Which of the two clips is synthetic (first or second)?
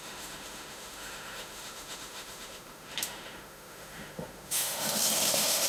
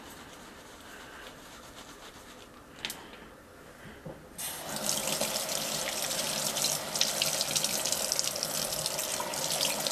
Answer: first